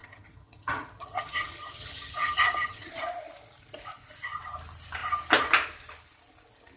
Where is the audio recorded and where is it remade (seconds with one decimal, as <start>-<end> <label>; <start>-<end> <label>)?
0.0-2.9 remade; 2.9-6.8 recorded